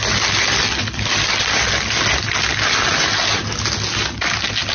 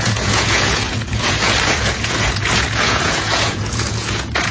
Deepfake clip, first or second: second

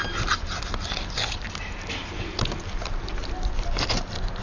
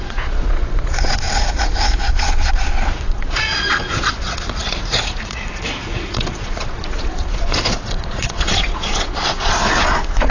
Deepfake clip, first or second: second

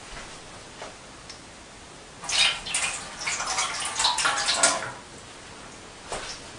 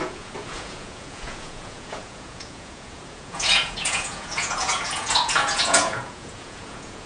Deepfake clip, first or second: second